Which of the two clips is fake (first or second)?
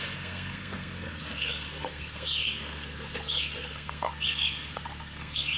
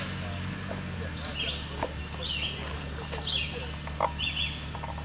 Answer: first